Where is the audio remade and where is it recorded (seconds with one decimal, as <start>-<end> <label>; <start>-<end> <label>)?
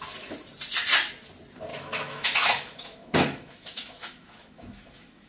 0.0-1.7 recorded; 1.7-5.3 remade